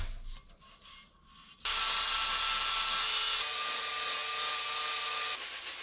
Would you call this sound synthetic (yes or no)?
no